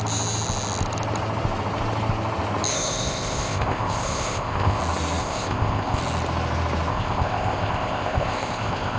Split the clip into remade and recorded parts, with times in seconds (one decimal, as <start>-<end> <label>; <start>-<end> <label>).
0.0-2.7 recorded; 2.7-4.8 remade; 4.8-5.2 recorded; 5.2-6.0 remade; 6.0-6.9 recorded; 6.9-9.0 remade